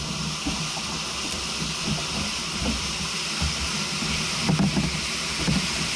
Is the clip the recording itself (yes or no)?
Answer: yes